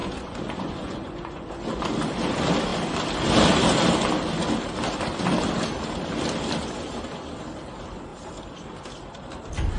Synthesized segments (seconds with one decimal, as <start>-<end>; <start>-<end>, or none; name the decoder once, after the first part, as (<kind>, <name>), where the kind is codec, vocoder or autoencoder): 0.0-1.8 (vocoder, Vocos)